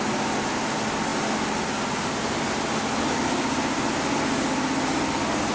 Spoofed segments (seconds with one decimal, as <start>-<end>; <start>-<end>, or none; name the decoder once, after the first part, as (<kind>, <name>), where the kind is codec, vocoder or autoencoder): none